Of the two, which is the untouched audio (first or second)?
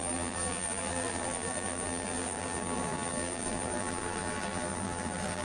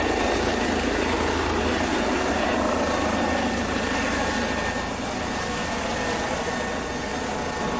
second